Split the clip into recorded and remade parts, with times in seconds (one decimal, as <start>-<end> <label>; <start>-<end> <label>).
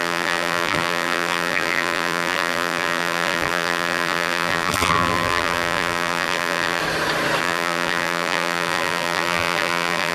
0.0-6.8 remade; 6.8-7.4 recorded; 7.4-10.1 remade